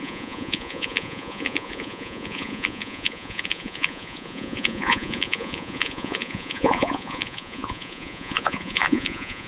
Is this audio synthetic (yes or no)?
yes